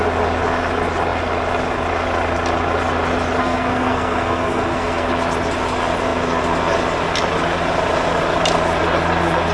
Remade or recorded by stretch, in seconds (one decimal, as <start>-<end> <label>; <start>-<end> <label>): 0.0-3.4 recorded; 3.4-5.1 remade; 5.1-9.5 recorded